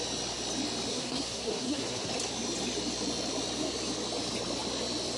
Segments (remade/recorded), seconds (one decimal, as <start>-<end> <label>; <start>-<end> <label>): 0.0-0.9 recorded; 0.9-2.1 remade; 2.1-5.2 recorded